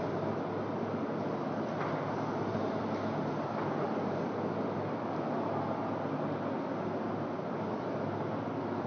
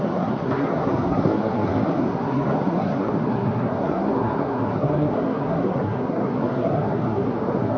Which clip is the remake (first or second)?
second